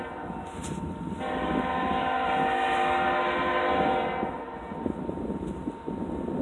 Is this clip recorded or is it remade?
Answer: recorded